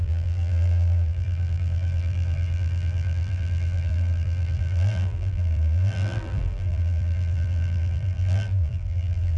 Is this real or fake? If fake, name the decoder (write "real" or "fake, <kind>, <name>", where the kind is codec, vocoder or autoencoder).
fake, vocoder, BigVGAN v2